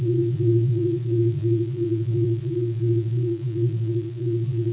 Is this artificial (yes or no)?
yes